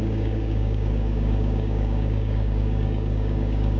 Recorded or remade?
remade